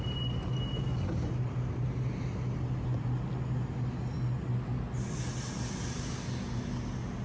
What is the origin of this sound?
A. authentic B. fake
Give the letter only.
A